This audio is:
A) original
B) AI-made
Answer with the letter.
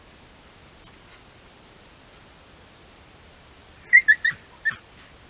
A